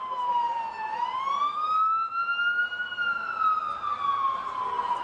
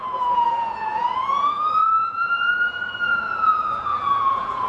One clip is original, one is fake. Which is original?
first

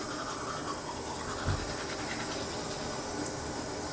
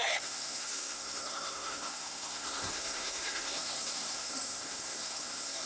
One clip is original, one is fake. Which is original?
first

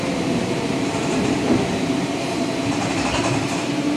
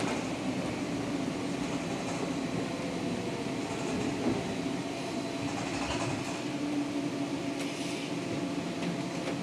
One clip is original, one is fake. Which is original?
second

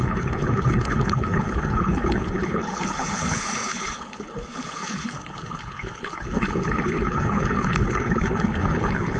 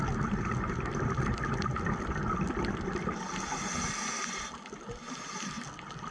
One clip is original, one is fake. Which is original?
second